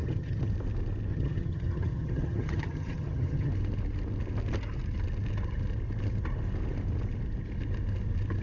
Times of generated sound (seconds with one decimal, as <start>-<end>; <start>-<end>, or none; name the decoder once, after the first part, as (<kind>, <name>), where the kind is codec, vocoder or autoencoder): 0.0-0.5 (vocoder, HiFi-GAN); 1.1-3.5